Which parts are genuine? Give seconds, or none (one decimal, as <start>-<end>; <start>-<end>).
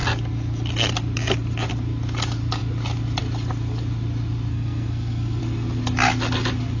0.0-4.5; 5.4-6.8